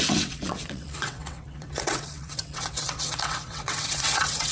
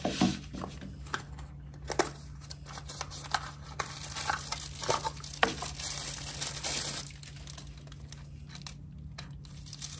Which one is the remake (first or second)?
first